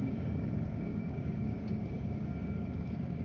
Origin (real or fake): fake